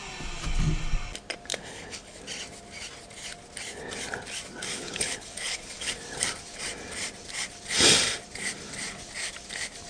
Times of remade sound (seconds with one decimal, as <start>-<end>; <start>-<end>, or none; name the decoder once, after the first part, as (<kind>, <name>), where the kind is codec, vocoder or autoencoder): 1.5-2.2 (codec, HILCodec); 4.7-5.9